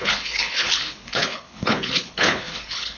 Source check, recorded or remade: remade